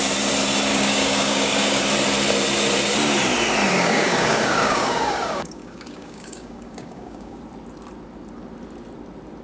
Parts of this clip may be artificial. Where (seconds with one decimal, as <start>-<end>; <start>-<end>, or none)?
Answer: 0.7-1.8; 3.7-7.4